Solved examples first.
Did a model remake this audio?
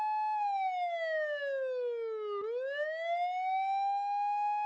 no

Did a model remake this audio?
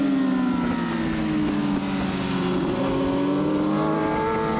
no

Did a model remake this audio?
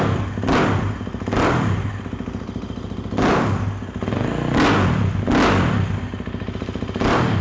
no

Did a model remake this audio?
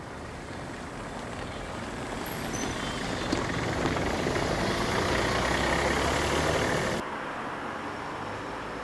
no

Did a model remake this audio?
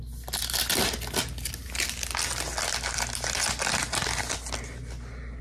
no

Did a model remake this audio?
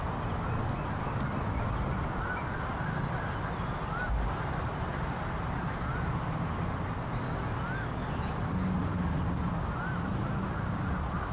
no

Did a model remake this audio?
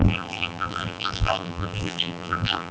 yes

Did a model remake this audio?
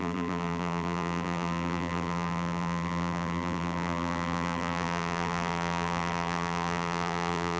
yes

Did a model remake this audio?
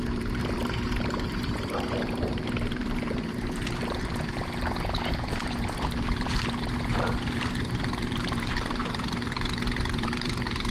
yes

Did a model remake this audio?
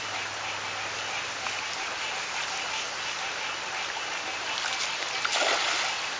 no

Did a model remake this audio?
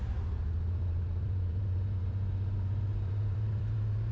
yes